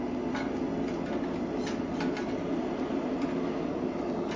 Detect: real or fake real